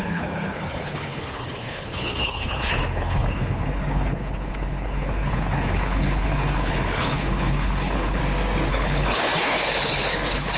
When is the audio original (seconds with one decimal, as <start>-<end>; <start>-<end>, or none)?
8.2-8.7